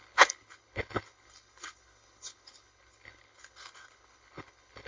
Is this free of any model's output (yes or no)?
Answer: no